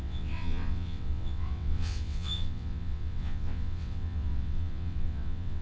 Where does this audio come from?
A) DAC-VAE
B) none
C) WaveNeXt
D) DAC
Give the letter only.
C